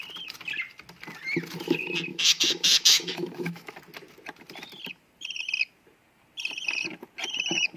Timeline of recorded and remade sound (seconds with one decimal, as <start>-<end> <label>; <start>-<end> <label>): 0.0-2.1 recorded; 2.1-3.7 remade; 3.7-7.8 recorded